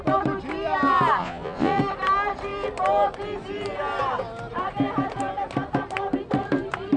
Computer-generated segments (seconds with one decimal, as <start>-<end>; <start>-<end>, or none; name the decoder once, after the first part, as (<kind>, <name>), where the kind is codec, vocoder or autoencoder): 1.2-1.8 (vocoder, Vocos)